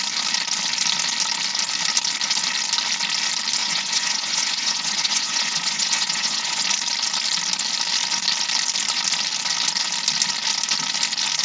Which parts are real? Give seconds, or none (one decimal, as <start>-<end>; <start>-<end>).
0.0-3.6; 6.6-11.4